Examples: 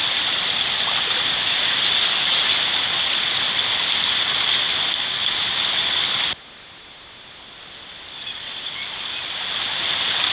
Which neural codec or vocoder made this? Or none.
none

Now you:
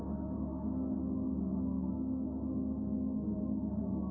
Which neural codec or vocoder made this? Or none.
autoencoder, DAC-VAE